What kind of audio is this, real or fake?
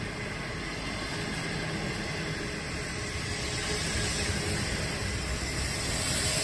real